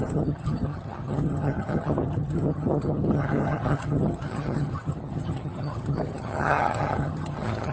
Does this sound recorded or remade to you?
remade